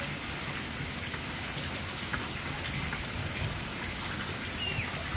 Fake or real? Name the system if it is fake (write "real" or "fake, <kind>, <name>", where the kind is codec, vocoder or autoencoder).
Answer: real